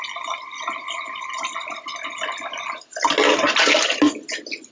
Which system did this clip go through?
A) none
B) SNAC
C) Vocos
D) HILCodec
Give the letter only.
A